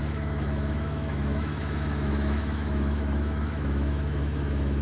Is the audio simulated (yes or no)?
yes